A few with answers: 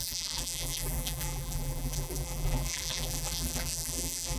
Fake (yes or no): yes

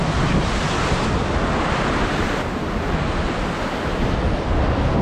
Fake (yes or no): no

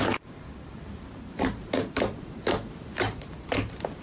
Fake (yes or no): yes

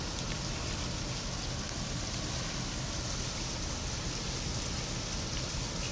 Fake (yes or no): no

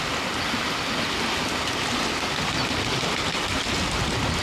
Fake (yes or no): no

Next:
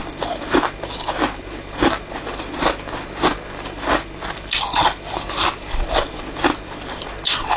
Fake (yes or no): no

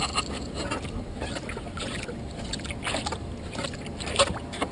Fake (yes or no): no